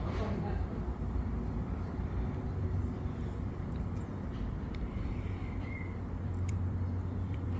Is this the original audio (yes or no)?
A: no